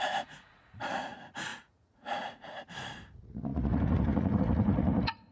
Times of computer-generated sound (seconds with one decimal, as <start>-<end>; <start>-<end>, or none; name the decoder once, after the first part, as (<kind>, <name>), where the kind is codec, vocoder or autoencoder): 0.0-5.3 (vocoder, Vocos)